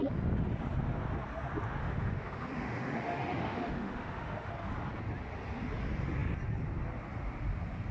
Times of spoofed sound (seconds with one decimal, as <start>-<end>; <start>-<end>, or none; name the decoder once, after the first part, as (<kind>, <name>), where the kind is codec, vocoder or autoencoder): 1.8-4.5 (autoencoder, DAC-VAE)